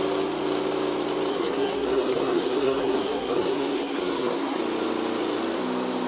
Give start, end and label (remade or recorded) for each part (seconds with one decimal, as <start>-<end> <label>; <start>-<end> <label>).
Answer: 0.0-1.3 recorded; 1.3-4.6 remade; 4.6-6.1 recorded